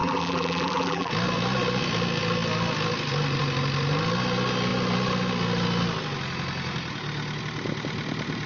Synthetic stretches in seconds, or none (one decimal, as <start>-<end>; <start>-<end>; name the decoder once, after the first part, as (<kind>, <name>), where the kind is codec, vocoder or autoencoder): 0.0-1.1 (vocoder, BigVGAN v2)